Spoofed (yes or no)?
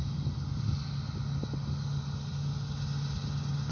no